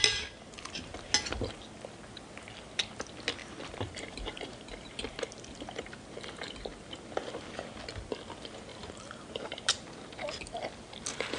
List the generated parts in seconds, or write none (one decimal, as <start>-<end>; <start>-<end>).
3.4-4.9; 8.7-9.6